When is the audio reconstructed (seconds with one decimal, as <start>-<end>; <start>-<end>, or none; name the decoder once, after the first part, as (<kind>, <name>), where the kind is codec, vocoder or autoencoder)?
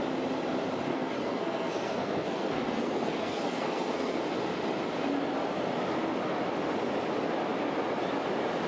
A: 0.9-4.2 (codec, SNAC)